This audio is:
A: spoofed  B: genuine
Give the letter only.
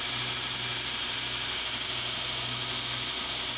B